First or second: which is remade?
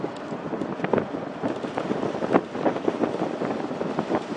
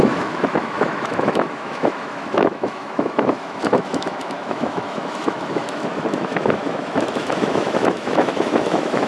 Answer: second